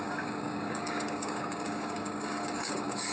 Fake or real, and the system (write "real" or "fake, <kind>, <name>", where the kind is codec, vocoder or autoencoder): fake, codec, DAC